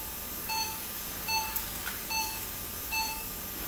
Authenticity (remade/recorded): remade